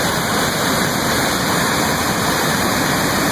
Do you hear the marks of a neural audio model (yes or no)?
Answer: yes